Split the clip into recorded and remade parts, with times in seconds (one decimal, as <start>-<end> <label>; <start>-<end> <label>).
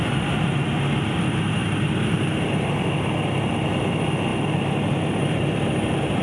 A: 0.0-6.2 recorded